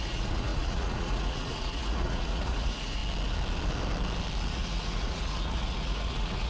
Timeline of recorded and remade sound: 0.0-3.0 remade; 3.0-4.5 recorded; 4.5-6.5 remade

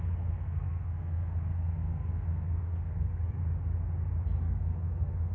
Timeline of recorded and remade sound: 0.0-3.4 remade; 3.4-4.4 recorded; 4.4-5.3 remade